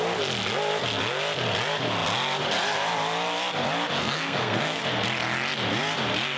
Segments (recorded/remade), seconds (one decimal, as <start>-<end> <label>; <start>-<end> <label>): 0.0-4.0 recorded; 4.0-4.8 remade; 4.8-6.4 recorded